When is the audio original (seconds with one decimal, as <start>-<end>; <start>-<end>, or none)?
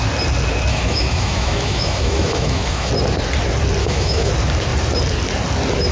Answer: 0.0-0.7; 2.9-3.8; 4.3-5.9